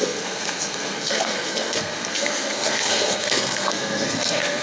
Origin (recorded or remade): remade